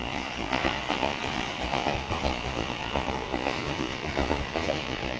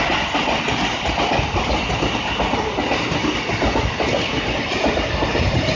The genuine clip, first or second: second